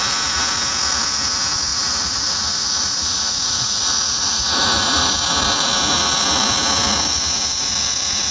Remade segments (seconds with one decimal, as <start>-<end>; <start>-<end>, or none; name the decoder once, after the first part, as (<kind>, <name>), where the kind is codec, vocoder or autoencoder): 1.7-5.1 (vocoder, Vocos)